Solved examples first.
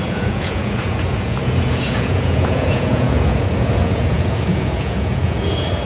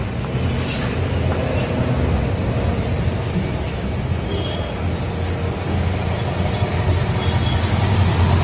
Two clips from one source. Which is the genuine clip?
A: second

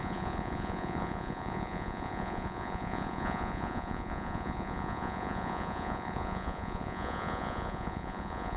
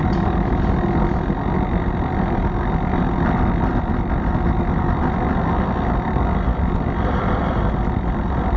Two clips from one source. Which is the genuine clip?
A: second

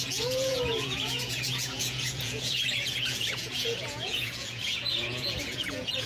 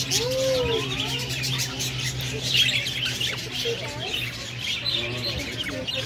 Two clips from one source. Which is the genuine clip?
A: second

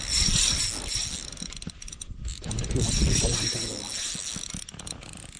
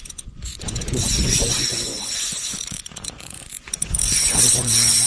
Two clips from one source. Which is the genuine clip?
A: first